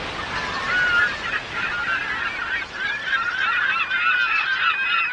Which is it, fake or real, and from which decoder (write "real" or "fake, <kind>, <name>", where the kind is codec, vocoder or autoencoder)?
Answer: real